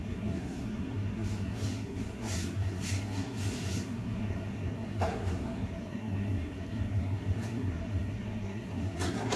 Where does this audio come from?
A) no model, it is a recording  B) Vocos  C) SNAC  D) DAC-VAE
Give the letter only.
C